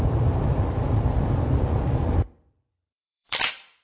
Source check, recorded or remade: remade